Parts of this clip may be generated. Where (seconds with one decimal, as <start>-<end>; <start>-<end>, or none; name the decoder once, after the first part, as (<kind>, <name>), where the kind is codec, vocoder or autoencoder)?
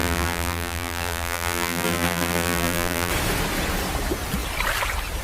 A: 0.0-3.1 (vocoder, BigVGAN v2)